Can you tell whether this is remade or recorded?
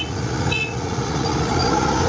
remade